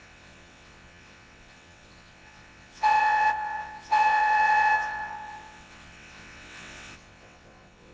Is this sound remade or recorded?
remade